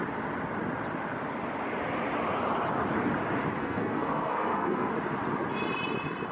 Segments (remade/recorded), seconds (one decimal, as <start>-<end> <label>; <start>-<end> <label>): 0.0-3.6 recorded; 3.6-4.9 remade; 4.9-6.3 recorded